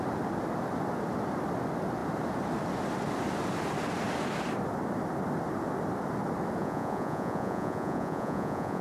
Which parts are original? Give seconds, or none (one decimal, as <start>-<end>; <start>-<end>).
0.0-6.6